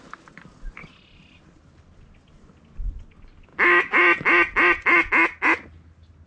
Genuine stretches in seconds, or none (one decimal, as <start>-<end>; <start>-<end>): 0.0-6.3